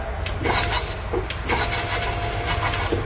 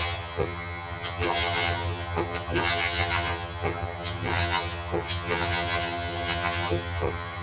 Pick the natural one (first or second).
first